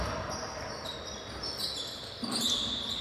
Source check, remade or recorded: recorded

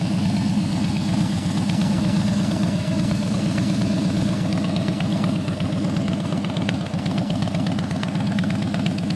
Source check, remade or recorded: remade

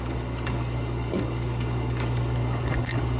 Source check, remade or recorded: remade